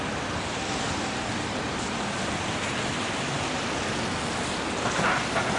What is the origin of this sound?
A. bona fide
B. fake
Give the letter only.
A